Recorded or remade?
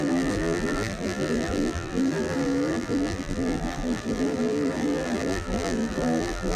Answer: remade